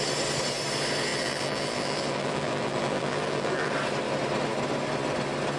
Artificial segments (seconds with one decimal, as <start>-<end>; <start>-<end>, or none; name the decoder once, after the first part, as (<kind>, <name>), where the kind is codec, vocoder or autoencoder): 1.1-3.7 (vocoder, BigVGAN v2)